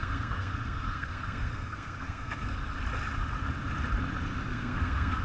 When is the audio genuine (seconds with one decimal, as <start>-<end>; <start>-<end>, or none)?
2.5-4.5